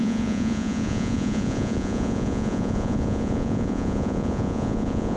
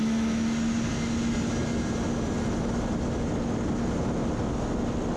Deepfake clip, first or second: first